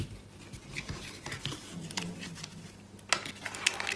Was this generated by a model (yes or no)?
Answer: no